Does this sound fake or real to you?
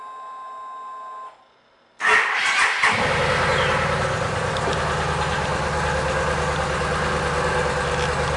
real